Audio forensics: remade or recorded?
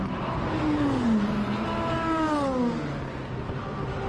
recorded